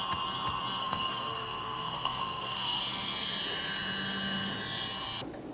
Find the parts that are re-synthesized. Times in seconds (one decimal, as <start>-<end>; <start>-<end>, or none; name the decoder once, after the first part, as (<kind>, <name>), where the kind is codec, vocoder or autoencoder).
0.8-2.8 (codec, SNAC)